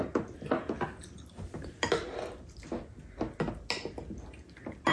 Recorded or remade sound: recorded